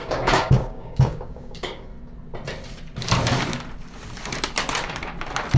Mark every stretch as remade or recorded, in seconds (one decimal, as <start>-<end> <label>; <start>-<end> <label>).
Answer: 0.0-1.9 remade; 1.9-5.6 recorded